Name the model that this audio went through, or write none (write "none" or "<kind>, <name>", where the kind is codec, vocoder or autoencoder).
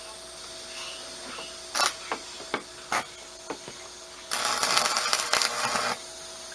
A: none